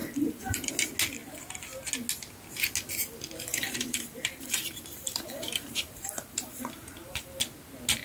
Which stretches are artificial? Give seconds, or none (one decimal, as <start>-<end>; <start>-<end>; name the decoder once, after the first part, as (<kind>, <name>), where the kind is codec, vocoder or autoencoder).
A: 0.0-0.7 (vocoder, BigVGAN v2); 3.5-7.4